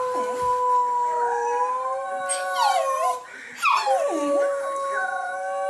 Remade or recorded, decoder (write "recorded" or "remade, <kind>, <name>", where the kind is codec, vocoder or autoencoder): recorded